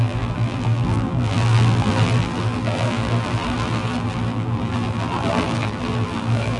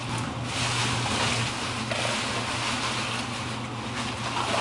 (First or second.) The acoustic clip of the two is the second